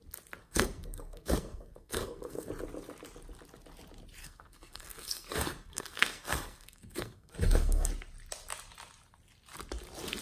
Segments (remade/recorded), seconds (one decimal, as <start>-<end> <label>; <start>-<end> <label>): 0.0-0.4 recorded; 0.4-2.5 remade; 2.5-4.2 recorded; 4.2-7.9 remade; 7.9-10.2 recorded